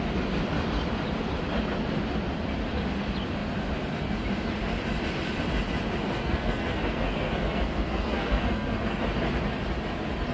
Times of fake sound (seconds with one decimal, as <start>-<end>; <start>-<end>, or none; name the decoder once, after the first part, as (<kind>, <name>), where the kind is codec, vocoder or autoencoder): 6.0-9.0 (codec, SNAC)